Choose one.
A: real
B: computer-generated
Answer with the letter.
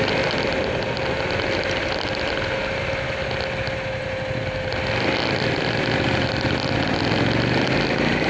A